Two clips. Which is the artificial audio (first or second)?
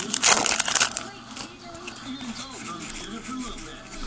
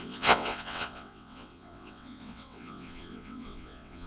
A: second